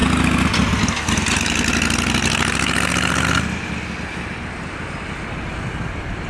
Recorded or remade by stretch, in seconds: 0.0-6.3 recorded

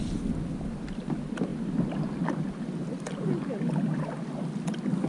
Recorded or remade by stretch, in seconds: 0.0-5.1 recorded